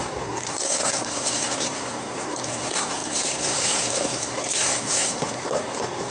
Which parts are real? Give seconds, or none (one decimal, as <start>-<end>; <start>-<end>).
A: none